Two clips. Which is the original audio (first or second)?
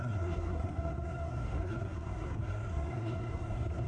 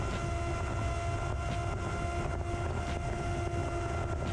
second